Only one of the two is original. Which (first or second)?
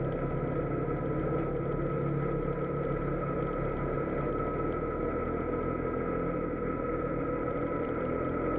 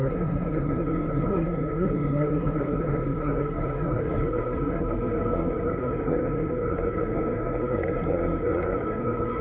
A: first